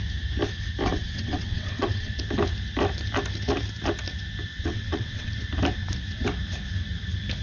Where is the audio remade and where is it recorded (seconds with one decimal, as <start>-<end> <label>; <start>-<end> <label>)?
0.0-0.9 recorded; 0.9-2.1 remade; 2.1-4.5 recorded; 4.5-5.3 remade; 5.3-7.4 recorded